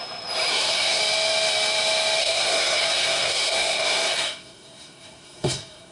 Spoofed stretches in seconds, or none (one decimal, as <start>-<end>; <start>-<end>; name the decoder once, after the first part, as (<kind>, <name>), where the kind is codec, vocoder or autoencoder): 0.5-1.0 (codec, SNAC); 2.2-5.9